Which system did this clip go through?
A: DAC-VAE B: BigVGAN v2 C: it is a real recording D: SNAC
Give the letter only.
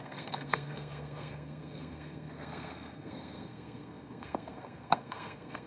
D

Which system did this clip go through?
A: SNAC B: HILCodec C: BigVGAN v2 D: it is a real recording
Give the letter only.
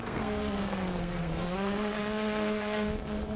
A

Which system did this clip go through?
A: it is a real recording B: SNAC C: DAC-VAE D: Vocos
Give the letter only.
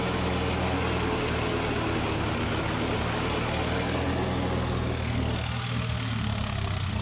A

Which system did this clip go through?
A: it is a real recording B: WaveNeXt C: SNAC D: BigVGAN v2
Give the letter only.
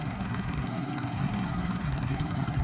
C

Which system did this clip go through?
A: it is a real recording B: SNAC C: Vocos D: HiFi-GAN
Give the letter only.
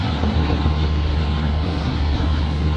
B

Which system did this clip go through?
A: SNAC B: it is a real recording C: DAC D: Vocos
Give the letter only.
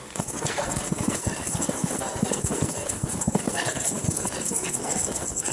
A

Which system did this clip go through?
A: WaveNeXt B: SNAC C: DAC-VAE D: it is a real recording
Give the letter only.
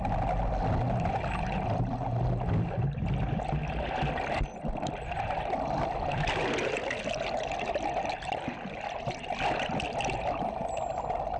D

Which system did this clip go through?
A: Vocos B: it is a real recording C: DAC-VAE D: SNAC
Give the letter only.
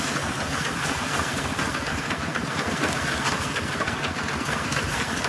D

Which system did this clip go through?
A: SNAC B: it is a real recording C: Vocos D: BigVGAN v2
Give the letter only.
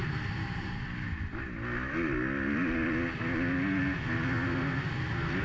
B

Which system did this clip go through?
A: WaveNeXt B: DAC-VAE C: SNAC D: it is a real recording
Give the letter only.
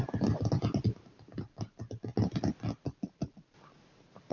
D